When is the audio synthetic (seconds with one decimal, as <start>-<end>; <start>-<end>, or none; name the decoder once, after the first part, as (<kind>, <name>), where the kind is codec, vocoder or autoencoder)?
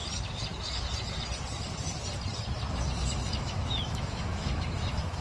2.7-5.2 (autoencoder, DAC-VAE)